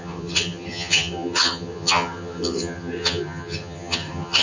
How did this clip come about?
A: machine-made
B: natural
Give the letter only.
A